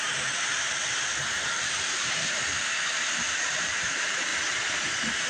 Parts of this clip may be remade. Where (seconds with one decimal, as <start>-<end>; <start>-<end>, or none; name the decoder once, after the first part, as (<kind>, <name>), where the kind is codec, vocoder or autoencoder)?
0.0-4.3 (vocoder, BigVGAN v2)